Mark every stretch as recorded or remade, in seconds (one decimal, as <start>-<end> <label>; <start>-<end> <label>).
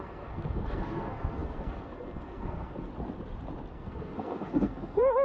0.0-2.9 remade; 2.9-3.7 recorded; 3.7-5.2 remade